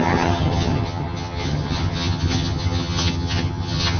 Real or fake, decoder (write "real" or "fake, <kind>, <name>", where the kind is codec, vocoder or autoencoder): fake, vocoder, HiFi-GAN